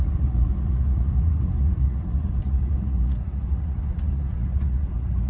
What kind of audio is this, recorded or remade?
remade